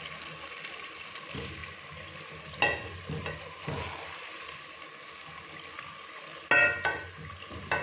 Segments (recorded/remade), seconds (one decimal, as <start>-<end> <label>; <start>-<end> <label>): 0.0-7.8 recorded